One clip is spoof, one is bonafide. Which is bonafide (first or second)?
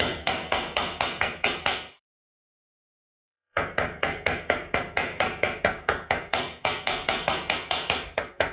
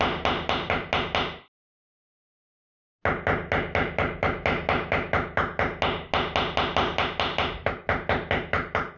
second